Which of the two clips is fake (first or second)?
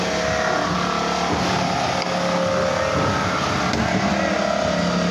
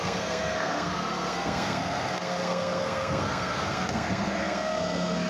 second